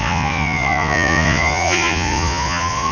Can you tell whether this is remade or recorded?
remade